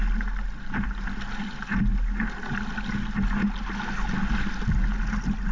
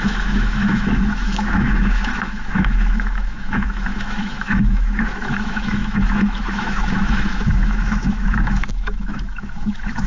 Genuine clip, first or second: first